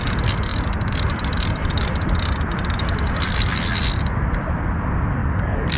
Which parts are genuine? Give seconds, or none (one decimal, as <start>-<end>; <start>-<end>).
0.0-5.2